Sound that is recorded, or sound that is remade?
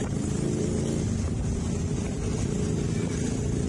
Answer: recorded